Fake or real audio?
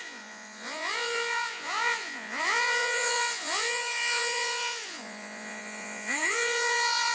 fake